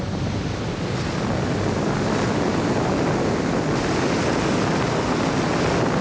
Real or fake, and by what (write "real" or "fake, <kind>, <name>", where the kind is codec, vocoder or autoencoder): real